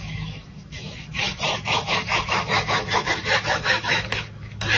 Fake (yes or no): yes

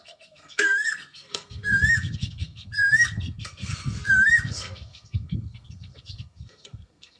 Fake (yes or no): yes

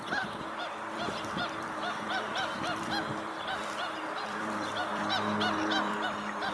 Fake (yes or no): yes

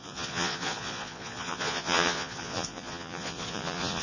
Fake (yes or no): yes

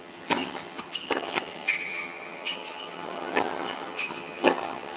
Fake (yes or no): yes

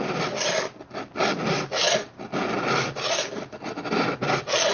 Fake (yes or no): no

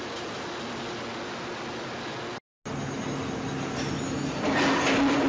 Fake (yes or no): no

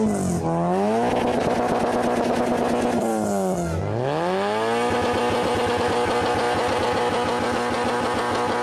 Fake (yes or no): no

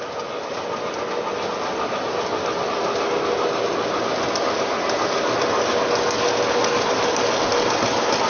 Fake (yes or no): no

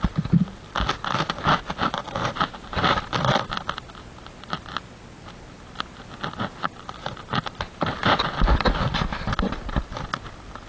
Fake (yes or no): no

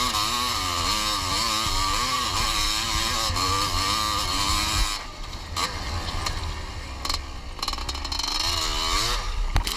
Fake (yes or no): no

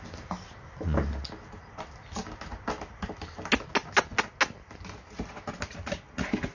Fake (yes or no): no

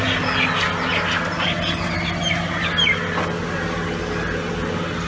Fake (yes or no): no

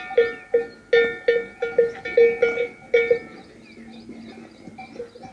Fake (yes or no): no